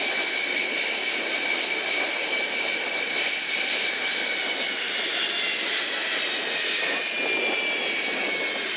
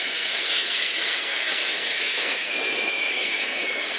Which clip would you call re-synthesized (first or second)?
second